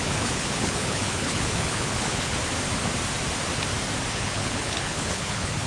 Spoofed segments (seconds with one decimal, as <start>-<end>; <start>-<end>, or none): 0.0-2.4; 4.1-5.7